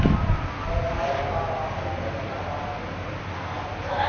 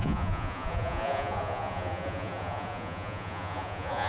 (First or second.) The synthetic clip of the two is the second